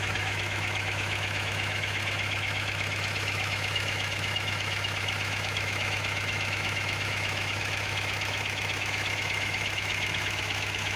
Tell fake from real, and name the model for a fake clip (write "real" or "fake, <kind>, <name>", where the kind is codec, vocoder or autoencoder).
fake, autoencoder, DAC-VAE